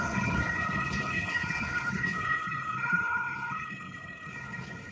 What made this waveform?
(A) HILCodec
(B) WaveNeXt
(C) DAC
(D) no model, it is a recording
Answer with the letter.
A